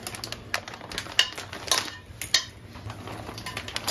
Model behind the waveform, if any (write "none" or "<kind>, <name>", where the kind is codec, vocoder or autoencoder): none